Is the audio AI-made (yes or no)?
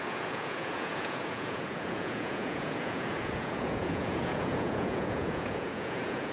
yes